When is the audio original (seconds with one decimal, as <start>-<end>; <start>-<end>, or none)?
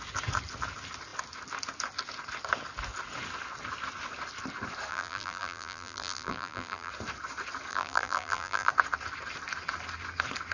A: 0.0-4.9; 6.9-7.7; 8.7-10.5